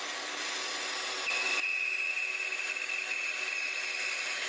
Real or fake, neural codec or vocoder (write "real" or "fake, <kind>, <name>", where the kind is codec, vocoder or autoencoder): real